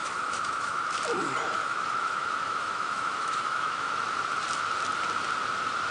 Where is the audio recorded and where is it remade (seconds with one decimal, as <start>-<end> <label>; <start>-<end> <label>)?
0.0-0.8 remade; 0.8-1.6 recorded; 1.6-3.9 remade; 3.9-5.9 recorded